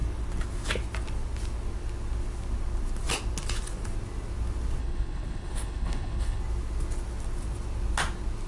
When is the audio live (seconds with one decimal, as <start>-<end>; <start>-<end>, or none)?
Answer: 0.0-4.8; 6.4-8.5